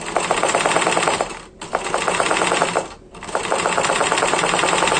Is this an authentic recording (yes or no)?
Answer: yes